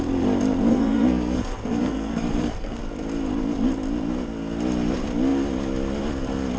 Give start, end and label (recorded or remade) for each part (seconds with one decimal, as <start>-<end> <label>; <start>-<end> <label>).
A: 0.0-0.7 recorded; 0.7-2.8 remade; 2.8-6.6 recorded